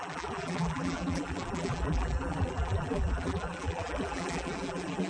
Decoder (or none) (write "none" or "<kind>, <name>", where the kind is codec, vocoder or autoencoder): vocoder, BigVGAN v2